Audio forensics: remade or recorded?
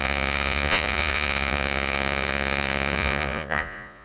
remade